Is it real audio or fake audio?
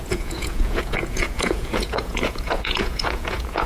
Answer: fake